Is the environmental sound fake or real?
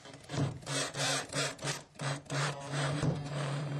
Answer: fake